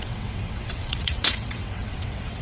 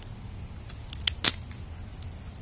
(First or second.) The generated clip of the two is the first